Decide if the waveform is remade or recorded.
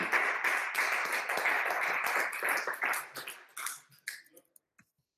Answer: recorded